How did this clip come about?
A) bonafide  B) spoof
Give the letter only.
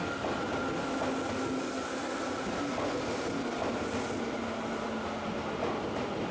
A